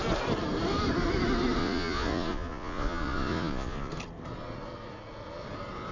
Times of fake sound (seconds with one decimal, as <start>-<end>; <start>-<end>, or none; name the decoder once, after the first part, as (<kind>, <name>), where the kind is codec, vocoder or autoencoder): 1.6-3.9 (vocoder, Vocos)